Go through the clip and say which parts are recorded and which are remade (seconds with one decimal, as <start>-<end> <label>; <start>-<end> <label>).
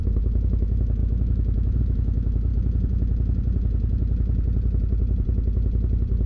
0.0-2.5 remade; 2.5-6.3 recorded